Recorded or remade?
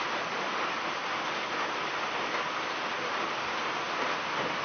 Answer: recorded